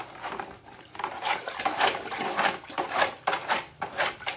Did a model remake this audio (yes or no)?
no